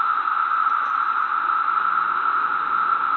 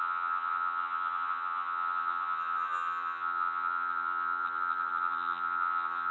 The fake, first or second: second